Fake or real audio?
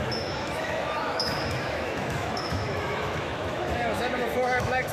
fake